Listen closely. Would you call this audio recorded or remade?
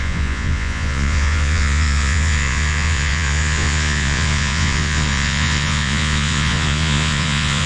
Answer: remade